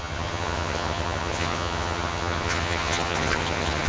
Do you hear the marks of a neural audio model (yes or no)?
yes